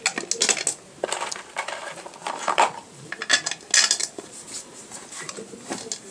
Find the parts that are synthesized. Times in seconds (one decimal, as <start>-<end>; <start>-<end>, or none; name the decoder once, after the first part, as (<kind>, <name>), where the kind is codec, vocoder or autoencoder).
2.2-3.1 (vocoder, BigVGAN v2); 4.0-5.6